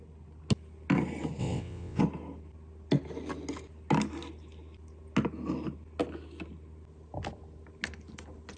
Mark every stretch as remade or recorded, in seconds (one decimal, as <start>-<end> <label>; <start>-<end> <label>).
0.0-1.4 recorded; 1.4-2.0 remade; 2.0-8.6 recorded